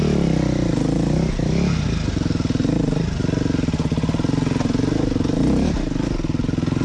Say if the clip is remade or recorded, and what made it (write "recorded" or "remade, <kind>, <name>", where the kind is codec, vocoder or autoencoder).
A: recorded